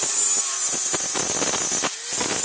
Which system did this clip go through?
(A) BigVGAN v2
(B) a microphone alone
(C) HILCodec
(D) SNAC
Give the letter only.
B